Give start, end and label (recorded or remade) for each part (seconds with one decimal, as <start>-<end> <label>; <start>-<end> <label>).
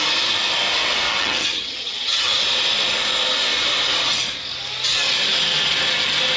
0.0-1.1 recorded; 1.1-2.4 remade; 2.4-6.4 recorded